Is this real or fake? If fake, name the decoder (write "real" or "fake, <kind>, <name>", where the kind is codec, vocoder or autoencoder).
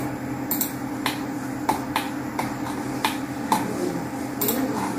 real